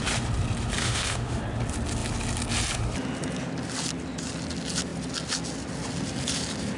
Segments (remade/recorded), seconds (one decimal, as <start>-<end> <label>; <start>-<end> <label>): 0.0-0.8 recorded; 0.8-1.4 remade; 1.4-6.8 recorded